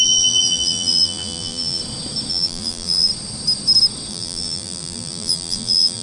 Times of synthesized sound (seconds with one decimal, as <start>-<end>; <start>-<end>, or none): 0.0-1.8; 2.3-3.1; 4.1-6.0